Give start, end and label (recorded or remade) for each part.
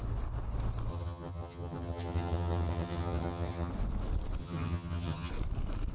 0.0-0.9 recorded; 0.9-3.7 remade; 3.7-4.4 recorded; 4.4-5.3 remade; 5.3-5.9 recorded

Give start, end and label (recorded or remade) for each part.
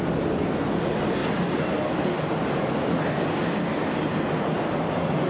0.0-5.3 recorded